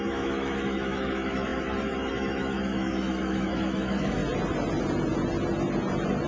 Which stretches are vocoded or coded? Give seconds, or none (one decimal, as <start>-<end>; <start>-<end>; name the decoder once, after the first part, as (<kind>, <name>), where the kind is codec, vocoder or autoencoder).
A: 0.0-4.2 (autoencoder, DAC-VAE)